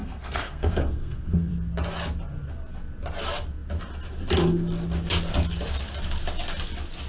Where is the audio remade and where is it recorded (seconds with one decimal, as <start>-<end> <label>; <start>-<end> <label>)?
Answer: 0.0-1.5 remade; 1.5-7.1 recorded